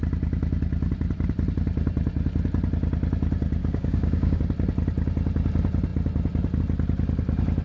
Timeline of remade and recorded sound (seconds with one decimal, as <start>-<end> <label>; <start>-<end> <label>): 0.0-3.6 recorded; 3.6-4.4 remade; 4.4-7.6 recorded